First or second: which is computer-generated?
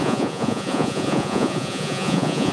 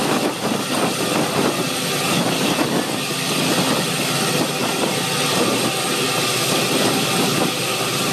first